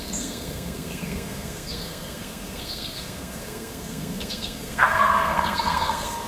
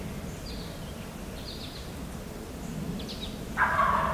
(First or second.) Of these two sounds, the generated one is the first